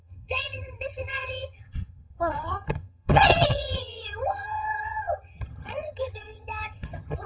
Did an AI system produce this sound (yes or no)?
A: yes